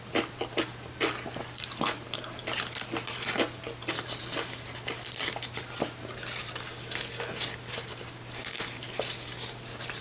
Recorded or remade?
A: recorded